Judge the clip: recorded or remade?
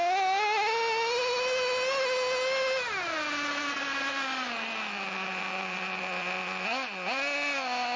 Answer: recorded